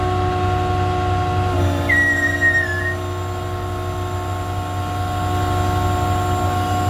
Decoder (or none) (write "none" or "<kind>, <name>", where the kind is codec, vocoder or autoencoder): none